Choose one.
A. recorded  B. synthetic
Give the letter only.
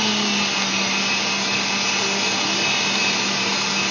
A